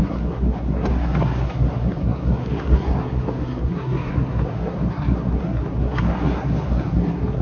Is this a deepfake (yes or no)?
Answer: yes